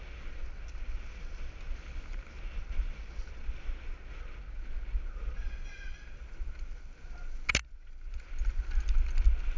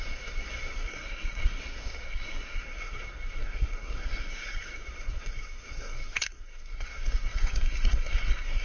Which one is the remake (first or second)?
second